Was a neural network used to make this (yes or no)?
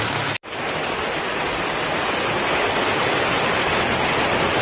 no